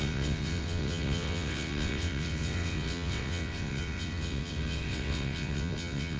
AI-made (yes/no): yes